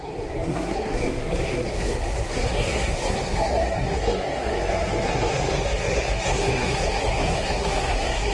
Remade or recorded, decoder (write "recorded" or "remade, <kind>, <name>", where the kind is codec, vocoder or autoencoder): remade, codec, SNAC